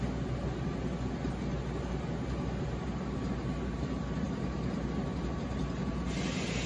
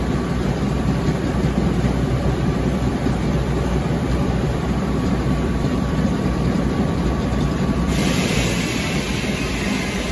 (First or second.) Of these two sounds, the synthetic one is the second